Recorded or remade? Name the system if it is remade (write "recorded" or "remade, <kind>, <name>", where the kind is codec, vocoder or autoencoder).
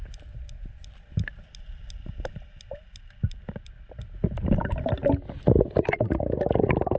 recorded